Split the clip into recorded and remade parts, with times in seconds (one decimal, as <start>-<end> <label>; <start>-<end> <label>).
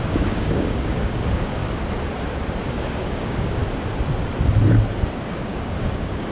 0.0-1.6 remade; 1.6-2.6 recorded; 2.6-3.6 remade; 3.6-5.3 recorded; 5.3-6.3 remade